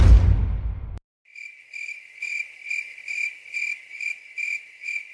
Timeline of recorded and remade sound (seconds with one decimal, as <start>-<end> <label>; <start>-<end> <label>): 0.0-5.1 recorded